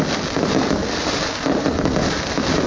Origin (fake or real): real